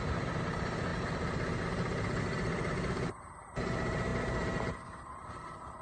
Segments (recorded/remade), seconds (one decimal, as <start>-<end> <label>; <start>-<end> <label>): 0.0-5.8 remade